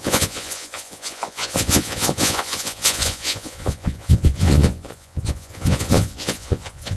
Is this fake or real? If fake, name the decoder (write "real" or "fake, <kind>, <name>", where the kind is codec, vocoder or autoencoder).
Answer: fake, vocoder, Vocos